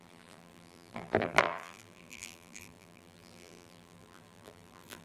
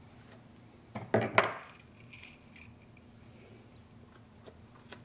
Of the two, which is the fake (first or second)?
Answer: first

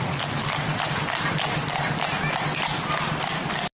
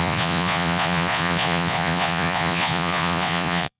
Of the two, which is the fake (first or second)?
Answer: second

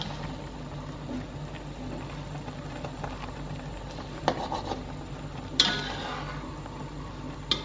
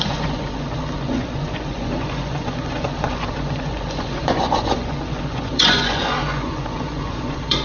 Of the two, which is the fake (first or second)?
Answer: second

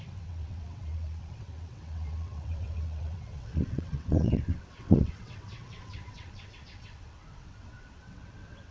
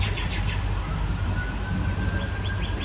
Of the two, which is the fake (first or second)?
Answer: first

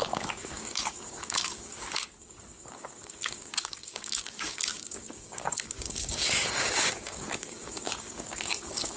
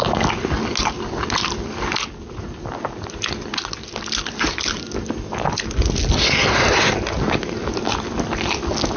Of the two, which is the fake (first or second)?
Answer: first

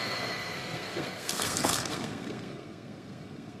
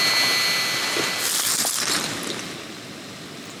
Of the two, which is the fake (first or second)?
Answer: first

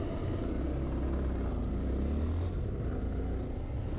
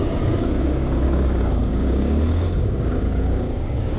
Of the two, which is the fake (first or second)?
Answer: second